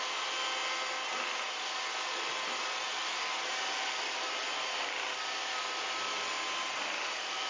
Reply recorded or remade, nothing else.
recorded